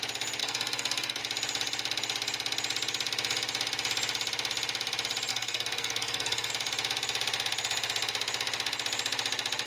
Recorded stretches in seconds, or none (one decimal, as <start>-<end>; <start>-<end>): 0.0-0.4; 1.2-5.3; 6.5-9.7